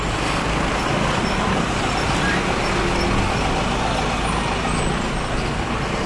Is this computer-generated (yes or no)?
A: no